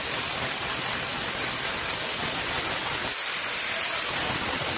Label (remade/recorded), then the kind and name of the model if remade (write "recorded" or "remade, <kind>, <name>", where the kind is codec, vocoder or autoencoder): recorded